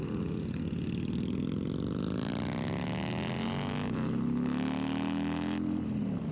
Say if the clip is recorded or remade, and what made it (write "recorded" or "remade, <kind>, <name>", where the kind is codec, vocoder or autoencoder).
recorded